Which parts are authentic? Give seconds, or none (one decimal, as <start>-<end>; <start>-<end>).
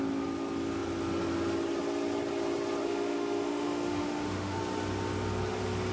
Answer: 0.0-2.8; 4.6-5.9